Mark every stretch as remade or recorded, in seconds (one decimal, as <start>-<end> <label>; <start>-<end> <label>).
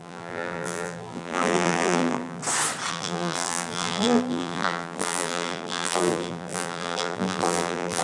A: 0.0-2.4 remade; 2.4-2.9 recorded; 2.9-8.0 remade